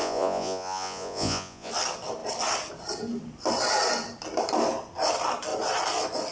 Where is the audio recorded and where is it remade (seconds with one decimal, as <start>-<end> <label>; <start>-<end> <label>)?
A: 0.0-1.7 remade; 1.7-6.3 recorded